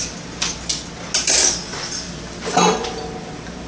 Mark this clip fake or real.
real